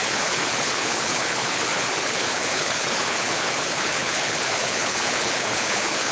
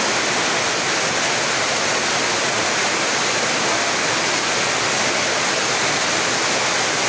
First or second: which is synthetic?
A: first